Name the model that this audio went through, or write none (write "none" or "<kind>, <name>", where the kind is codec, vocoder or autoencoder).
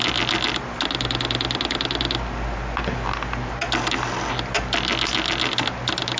none